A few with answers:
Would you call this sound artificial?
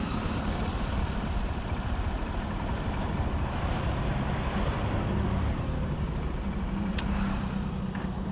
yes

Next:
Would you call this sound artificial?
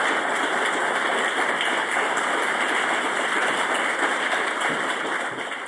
no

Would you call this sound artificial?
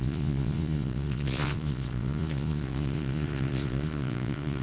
yes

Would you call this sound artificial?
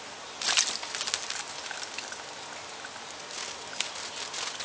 no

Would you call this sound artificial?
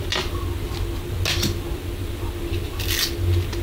no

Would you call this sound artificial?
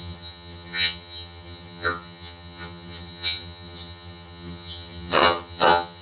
yes